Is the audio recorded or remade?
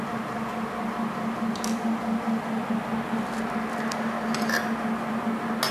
recorded